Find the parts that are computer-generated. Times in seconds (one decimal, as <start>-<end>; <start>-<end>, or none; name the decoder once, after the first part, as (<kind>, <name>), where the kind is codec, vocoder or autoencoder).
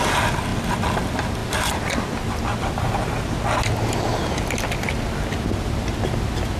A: none